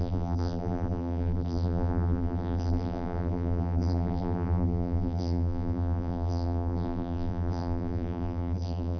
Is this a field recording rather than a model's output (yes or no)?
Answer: no